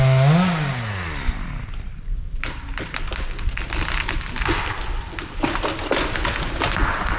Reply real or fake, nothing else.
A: real